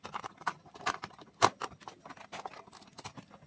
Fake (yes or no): no